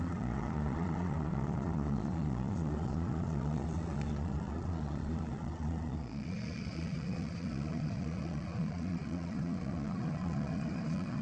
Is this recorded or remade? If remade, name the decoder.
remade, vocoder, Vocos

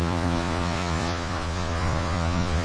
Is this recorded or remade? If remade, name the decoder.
remade, vocoder, Vocos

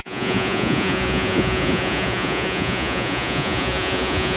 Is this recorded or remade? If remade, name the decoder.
remade, vocoder, Vocos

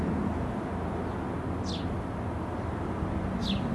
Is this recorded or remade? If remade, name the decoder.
recorded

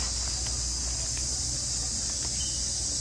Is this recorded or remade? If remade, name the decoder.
recorded